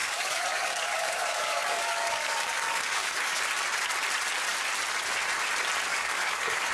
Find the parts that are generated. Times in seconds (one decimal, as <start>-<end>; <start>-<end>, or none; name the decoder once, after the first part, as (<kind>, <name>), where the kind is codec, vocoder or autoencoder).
0.0-3.4 (codec, DAC); 5.9-6.7